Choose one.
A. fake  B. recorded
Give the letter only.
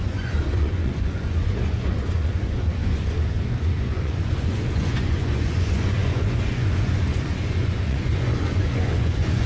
A